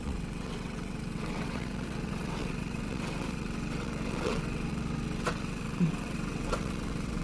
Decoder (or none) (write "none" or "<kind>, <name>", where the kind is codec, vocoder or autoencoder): vocoder, WaveNeXt